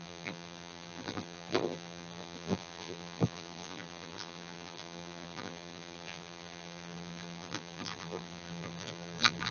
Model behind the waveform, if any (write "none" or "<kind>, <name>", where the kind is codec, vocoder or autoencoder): vocoder, BigVGAN v2